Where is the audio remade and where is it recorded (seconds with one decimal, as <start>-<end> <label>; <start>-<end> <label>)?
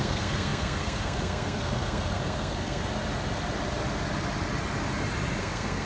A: 0.0-2.8 remade; 2.8-5.4 recorded; 5.4-5.9 remade